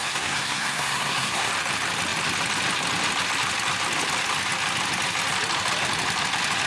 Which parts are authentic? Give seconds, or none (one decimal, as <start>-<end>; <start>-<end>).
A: 1.5-6.7